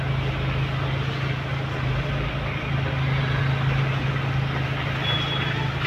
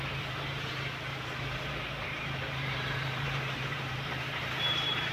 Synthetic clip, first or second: second